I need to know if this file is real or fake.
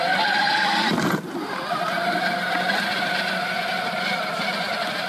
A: real